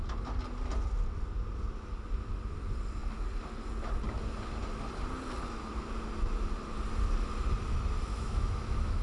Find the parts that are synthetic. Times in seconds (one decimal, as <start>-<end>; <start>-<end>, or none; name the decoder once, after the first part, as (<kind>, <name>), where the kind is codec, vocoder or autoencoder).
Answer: 8.1-9.0 (autoencoder, DAC-VAE)